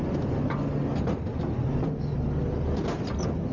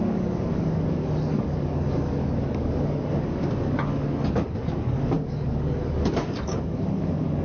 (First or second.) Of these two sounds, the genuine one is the first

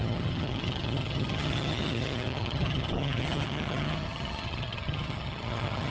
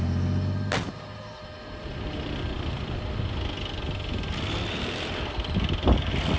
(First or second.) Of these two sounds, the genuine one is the second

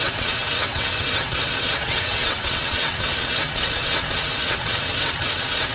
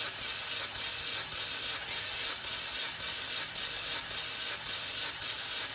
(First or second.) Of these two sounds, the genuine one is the second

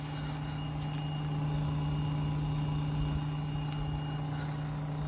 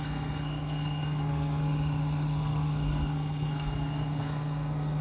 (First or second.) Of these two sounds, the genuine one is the first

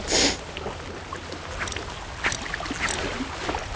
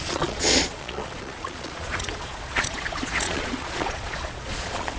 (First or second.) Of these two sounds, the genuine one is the first